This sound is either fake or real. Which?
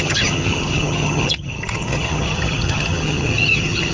fake